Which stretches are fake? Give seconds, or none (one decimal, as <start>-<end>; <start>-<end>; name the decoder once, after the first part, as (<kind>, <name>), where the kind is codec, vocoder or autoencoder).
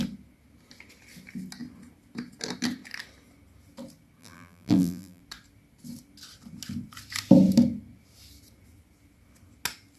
4.2-5.2 (vocoder, BigVGAN v2)